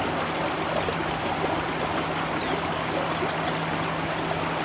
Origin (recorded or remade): remade